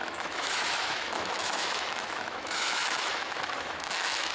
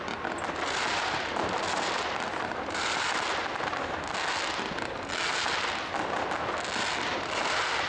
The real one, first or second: second